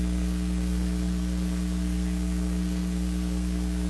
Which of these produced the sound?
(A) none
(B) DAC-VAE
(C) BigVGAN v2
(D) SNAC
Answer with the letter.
D